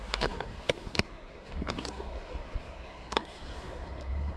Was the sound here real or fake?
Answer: fake